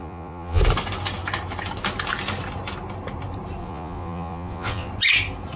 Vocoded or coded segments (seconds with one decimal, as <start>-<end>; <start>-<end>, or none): 0.0-0.6; 3.6-4.9